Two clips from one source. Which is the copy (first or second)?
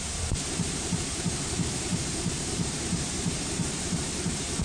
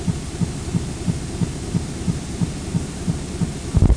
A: first